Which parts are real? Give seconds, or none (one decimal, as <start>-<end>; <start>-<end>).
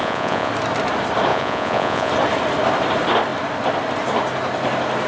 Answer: 0.5-1.3; 2.1-5.1